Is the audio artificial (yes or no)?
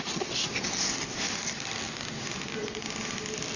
no